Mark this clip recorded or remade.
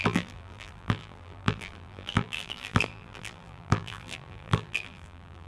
remade